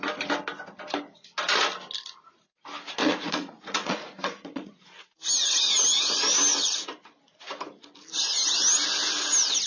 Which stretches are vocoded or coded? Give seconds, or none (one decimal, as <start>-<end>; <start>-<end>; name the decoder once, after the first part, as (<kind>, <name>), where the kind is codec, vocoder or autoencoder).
3.0-4.7 (vocoder, Vocos); 6.5-7.1